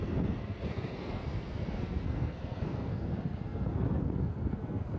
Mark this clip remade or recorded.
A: remade